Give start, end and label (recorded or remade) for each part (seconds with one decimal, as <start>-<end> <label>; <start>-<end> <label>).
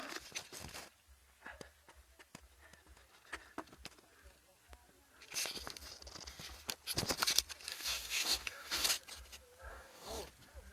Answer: 0.0-7.7 recorded; 7.7-8.9 remade; 8.9-9.7 recorded; 9.7-10.2 remade; 10.2-10.7 recorded